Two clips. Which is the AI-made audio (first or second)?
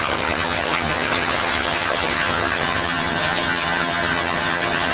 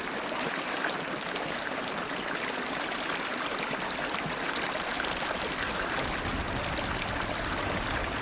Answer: first